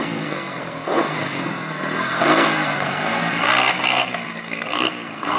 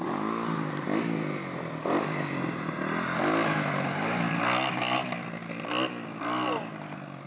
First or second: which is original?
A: second